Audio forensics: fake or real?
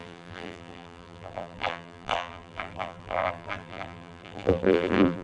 fake